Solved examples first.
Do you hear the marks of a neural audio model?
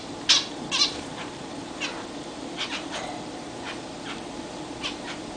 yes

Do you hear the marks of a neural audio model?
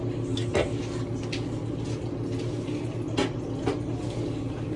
no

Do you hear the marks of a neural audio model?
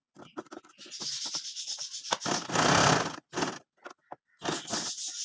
no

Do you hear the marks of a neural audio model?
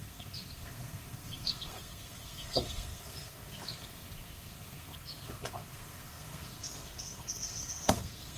yes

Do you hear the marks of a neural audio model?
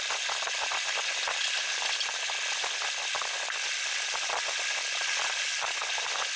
no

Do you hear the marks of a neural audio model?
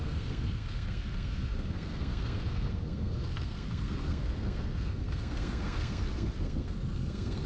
yes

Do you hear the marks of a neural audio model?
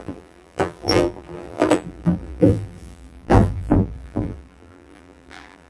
yes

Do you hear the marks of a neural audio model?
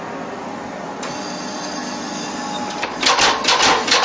no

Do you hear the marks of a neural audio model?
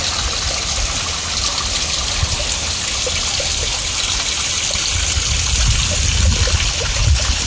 no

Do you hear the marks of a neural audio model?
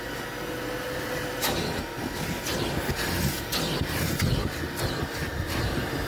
no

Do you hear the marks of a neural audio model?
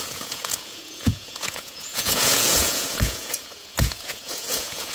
yes